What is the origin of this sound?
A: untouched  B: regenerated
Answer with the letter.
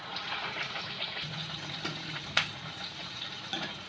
B